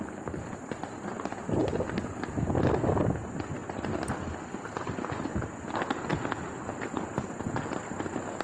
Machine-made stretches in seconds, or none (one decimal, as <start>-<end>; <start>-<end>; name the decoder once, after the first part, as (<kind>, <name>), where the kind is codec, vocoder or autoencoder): none